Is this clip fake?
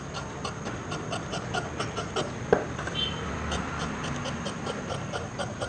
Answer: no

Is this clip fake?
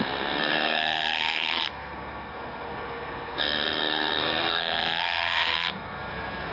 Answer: yes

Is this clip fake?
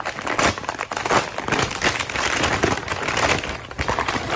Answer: yes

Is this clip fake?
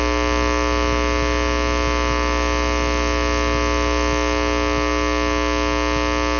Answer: no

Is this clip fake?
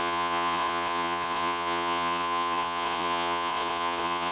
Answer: yes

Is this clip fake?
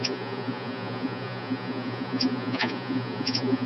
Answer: yes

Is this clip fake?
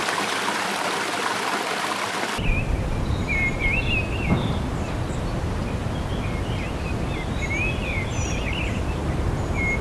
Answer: no